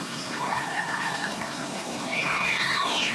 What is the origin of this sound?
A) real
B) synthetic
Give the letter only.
B